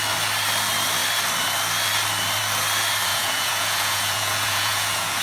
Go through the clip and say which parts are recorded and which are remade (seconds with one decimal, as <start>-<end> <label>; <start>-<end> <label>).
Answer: 0.0-3.1 recorded; 3.1-5.2 remade